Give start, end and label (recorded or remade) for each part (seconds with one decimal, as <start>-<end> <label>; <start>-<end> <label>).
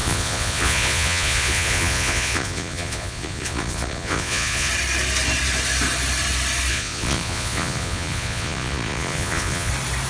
0.0-4.7 remade; 4.7-6.7 recorded; 6.7-9.7 remade; 9.7-10.1 recorded